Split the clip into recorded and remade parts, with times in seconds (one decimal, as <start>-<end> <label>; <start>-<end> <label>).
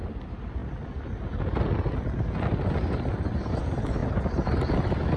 0.0-5.2 recorded